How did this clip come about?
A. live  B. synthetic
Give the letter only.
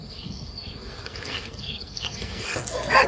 B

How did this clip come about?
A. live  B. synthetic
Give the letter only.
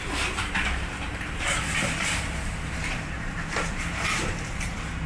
B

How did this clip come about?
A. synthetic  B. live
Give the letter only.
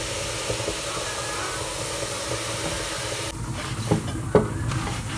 B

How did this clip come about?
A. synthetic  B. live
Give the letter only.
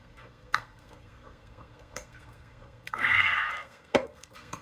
A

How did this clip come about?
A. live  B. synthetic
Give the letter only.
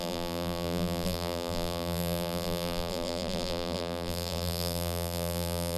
B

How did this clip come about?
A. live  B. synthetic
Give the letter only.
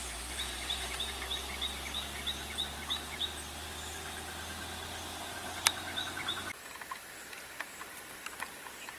A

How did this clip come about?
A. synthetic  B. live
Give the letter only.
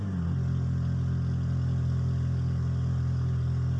B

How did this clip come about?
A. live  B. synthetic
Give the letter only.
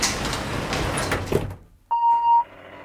A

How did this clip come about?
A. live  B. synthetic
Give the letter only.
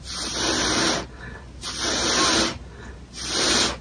A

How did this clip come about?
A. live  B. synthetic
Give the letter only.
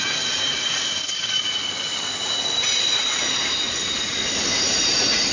A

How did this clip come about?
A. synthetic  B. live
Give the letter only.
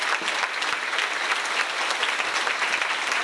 B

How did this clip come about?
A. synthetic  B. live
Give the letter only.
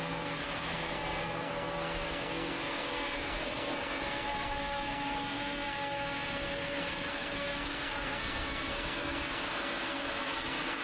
A